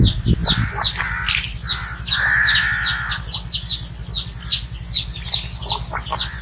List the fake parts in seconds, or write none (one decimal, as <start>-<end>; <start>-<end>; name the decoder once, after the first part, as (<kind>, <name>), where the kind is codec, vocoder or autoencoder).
none

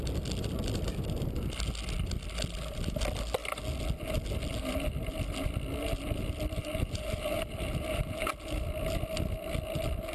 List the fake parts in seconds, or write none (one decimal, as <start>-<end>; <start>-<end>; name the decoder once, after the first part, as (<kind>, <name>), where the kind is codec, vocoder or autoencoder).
6.6-8.3 (vocoder, BigVGAN v2)